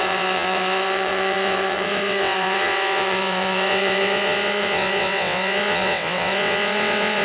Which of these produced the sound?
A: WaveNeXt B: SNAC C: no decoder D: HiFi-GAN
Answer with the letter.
A